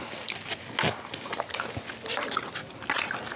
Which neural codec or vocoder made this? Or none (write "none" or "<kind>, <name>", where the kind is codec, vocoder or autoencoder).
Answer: none